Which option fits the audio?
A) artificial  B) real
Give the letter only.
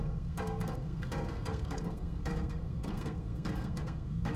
A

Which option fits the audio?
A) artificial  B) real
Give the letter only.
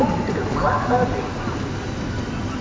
B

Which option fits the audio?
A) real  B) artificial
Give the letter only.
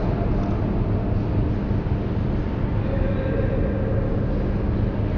A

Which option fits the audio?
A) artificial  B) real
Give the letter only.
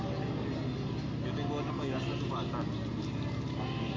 B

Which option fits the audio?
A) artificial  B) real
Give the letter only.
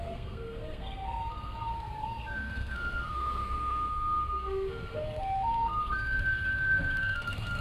A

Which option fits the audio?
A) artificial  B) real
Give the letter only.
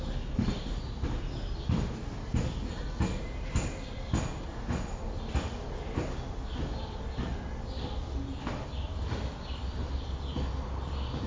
B